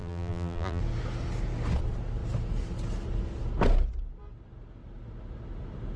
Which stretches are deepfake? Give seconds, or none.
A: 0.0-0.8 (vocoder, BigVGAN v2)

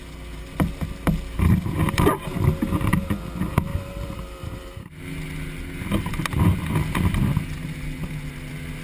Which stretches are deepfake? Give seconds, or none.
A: 3.7-4.9 (vocoder, BigVGAN v2)

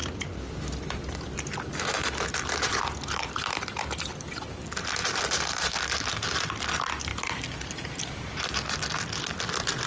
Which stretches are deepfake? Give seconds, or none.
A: 0.0-4.5 (vocoder, BigVGAN v2); 7.1-8.8

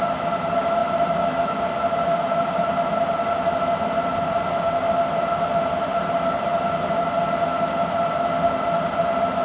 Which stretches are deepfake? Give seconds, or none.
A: none

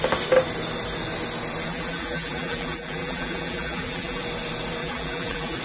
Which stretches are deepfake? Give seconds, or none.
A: 1.7-4.2 (vocoder, BigVGAN v2); 4.8-5.6

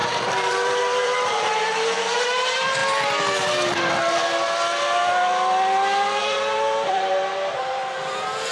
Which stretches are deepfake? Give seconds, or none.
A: 0.0-2.8 (vocoder, BigVGAN v2); 6.2-7.8